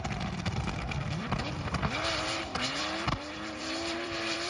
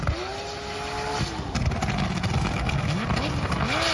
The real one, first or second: second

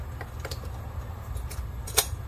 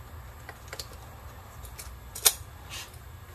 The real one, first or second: second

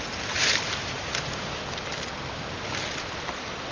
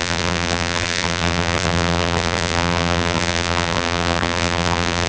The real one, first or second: first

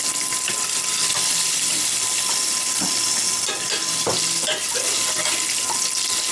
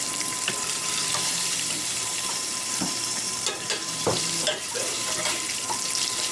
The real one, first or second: first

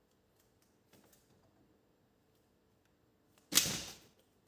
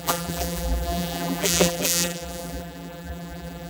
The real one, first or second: first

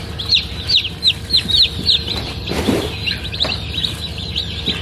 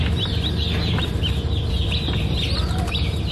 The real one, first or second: second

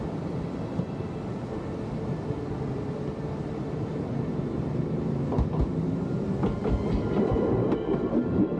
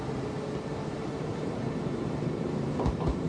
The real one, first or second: first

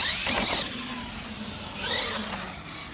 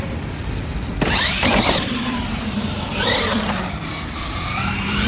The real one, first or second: first